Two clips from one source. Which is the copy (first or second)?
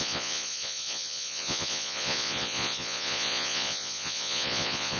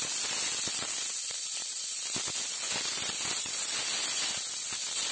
first